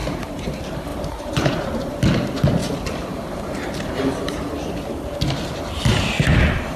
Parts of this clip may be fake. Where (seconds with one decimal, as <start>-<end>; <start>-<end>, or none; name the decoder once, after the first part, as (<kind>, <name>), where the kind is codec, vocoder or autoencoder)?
0.0-0.5 (vocoder, BigVGAN v2); 0.9-2.0; 2.6-4.6